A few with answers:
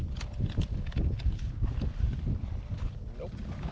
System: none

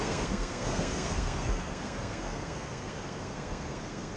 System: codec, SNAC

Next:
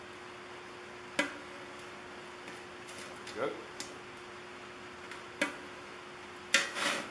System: none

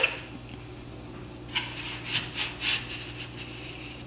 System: none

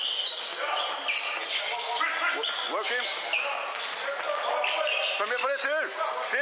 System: none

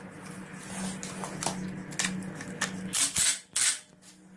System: none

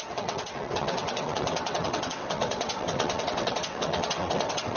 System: vocoder, WaveNeXt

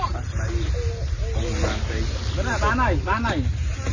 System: none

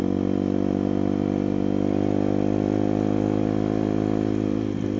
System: none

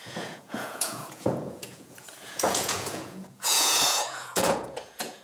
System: vocoder, Vocos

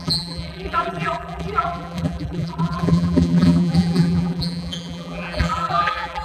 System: vocoder, BigVGAN v2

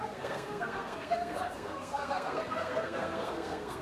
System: codec, SNAC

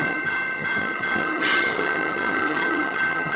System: vocoder, HiFi-GAN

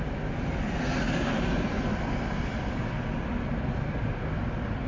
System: none